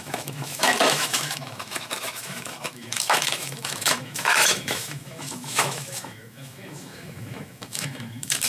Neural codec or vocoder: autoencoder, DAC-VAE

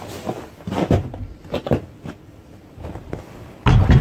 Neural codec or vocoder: none